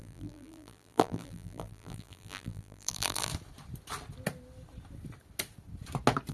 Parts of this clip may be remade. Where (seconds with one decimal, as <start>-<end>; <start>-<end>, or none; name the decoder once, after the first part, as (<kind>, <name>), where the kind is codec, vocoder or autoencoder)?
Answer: 0.0-3.3 (vocoder, BigVGAN v2)